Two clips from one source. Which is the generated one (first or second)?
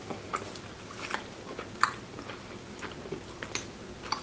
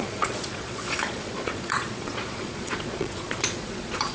second